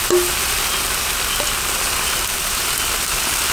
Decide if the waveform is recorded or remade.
recorded